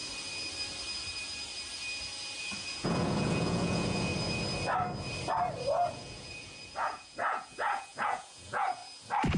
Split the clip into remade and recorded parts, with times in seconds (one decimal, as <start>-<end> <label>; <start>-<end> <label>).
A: 0.0-2.4 recorded; 2.4-4.1 remade; 4.1-5.9 recorded; 5.9-8.8 remade; 8.8-9.4 recorded